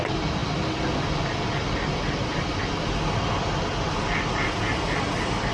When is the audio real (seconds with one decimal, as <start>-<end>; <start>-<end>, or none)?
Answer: 0.0-5.5